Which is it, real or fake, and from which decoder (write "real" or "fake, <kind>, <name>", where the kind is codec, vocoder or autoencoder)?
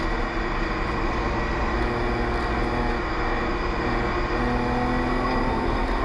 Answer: real